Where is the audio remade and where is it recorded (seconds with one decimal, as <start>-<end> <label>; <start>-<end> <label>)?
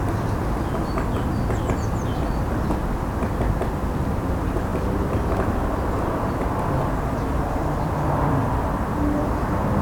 0.0-4.7 recorded; 4.7-8.6 remade; 8.6-9.8 recorded